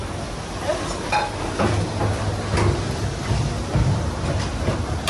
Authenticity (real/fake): real